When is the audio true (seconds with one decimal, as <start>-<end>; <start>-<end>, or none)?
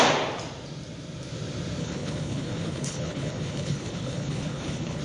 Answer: 0.0-1.8